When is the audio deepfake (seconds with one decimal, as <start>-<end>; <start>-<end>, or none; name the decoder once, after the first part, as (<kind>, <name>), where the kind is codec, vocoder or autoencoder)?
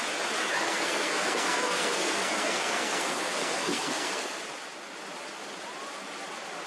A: 0.4-4.4 (codec, SNAC)